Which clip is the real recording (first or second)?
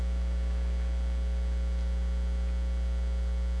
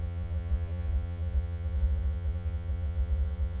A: first